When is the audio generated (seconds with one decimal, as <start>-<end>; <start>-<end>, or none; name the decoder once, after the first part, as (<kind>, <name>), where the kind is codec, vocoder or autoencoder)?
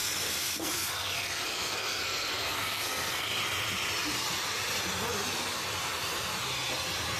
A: 0.0-3.3 (codec, SNAC)